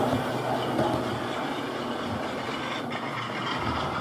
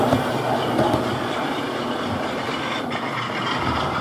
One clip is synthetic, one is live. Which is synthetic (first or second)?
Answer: second